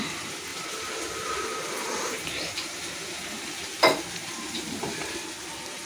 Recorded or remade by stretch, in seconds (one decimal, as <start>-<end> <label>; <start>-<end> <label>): 0.0-0.5 recorded; 0.5-3.5 remade; 3.5-4.2 recorded; 4.2-5.1 remade; 5.1-5.9 recorded